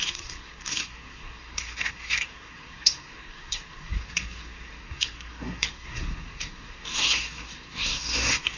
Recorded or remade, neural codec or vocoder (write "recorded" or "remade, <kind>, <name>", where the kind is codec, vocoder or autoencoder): remade, codec, SNAC